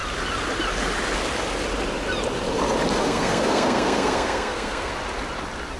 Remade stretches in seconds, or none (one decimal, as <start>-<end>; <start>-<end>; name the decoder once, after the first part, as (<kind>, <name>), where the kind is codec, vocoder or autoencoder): 3.0-4.9 (codec, SNAC)